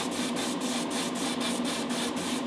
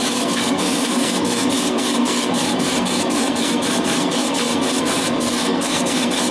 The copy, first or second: second